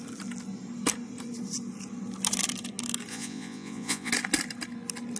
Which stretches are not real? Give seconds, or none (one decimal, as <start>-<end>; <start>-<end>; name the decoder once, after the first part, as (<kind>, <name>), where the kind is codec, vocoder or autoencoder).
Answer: 3.1-4.1 (vocoder, Vocos)